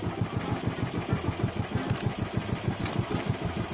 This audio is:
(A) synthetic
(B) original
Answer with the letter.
B